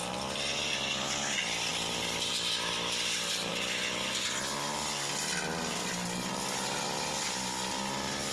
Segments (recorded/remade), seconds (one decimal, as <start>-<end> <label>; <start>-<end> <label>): 0.0-8.3 recorded